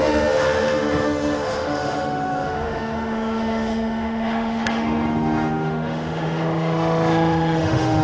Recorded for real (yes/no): no